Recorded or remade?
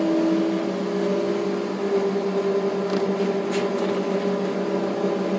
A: recorded